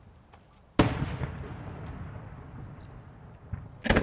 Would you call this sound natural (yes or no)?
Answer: yes